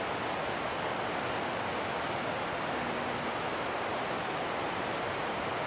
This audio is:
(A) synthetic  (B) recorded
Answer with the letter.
B